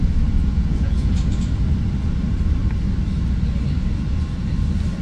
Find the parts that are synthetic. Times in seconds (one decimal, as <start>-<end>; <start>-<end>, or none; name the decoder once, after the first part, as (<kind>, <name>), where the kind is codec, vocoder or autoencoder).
0.5-1.1 (vocoder, Vocos)